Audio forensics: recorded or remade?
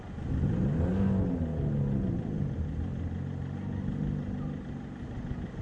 recorded